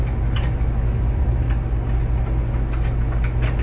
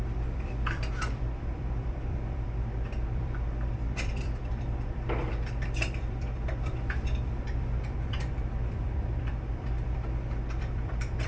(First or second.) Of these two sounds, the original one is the first